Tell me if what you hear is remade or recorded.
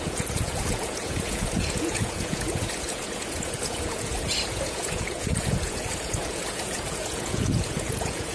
remade